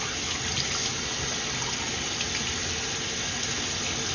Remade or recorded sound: recorded